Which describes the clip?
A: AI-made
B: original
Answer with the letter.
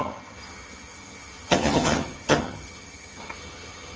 A